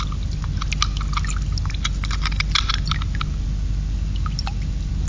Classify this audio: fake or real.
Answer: real